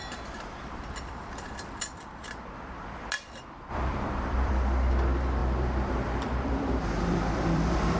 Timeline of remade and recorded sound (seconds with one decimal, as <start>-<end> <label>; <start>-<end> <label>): 0.0-4.5 remade; 4.5-5.4 recorded; 5.4-8.0 remade